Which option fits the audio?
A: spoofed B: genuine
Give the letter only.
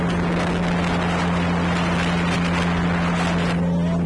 B